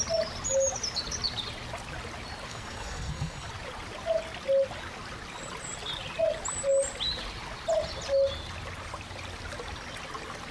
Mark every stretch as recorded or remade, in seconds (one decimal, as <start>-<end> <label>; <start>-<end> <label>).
0.0-2.5 recorded; 2.5-3.5 remade; 3.5-10.5 recorded